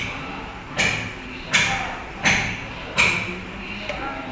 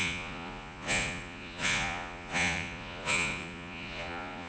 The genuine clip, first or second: first